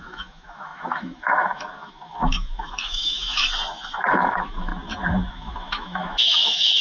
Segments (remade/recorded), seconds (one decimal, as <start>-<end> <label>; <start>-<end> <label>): 0.0-3.4 remade; 3.4-4.1 recorded; 4.1-4.7 remade; 4.7-5.3 recorded; 5.3-6.8 remade

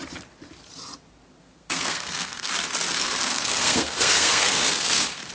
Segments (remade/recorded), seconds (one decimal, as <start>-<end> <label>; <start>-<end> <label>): 0.0-1.4 recorded; 1.4-2.5 remade; 2.5-2.9 recorded; 2.9-5.3 remade

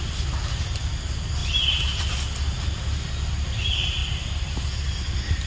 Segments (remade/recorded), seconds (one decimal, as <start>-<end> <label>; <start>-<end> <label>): 0.0-4.0 recorded; 4.0-4.6 remade; 4.6-5.5 recorded

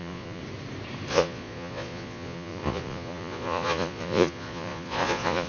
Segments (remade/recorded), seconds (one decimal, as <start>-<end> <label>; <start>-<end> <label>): 0.0-0.4 remade; 0.4-1.1 recorded; 1.1-5.5 remade

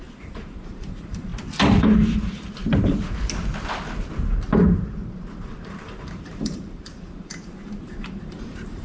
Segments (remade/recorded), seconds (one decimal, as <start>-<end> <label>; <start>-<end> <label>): 0.0-1.3 remade; 1.3-1.8 recorded; 1.8-2.6 remade; 2.6-5.3 recorded; 5.3-8.8 remade

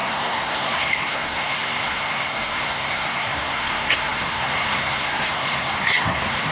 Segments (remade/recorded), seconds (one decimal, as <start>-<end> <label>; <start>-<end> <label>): 0.0-6.5 remade

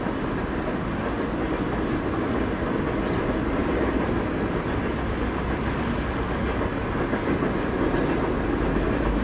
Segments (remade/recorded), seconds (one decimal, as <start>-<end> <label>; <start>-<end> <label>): 0.0-9.2 recorded

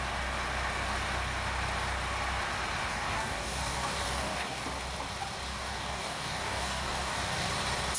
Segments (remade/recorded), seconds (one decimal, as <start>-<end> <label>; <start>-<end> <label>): 0.0-2.9 recorded; 2.9-4.6 remade; 4.6-5.5 recorded; 5.5-7.5 remade; 7.5-8.0 recorded